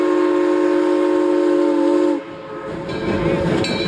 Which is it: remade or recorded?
recorded